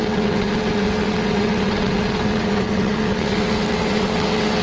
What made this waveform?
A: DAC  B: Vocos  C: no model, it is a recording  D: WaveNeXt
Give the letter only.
D